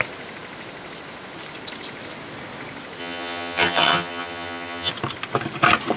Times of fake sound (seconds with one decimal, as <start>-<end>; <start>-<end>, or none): 3.0-4.9